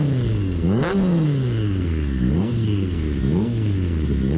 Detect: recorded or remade remade